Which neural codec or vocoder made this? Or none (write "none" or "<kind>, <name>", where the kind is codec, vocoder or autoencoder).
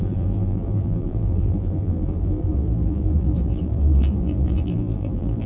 vocoder, BigVGAN v2